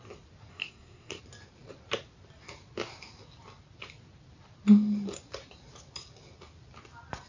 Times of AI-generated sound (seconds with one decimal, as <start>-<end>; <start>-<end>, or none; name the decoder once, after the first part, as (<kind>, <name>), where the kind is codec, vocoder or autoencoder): 0.5-1.2 (codec, SNAC)